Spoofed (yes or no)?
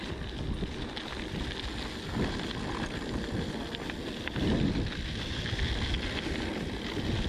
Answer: no